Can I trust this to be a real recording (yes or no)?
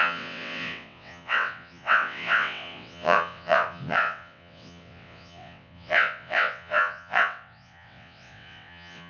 no